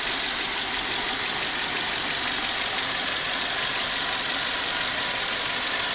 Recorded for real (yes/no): yes